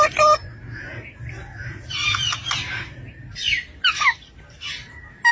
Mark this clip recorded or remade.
recorded